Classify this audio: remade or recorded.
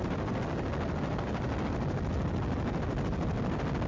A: recorded